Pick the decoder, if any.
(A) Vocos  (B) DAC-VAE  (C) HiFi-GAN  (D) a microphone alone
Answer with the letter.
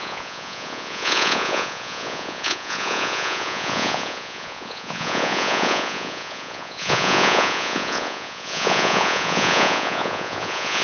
A